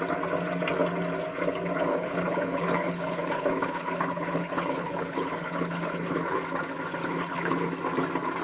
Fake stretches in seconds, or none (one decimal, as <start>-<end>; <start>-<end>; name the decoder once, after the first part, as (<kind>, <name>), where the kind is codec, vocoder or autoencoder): 1.9-6.4 (codec, HILCodec); 7.0-7.7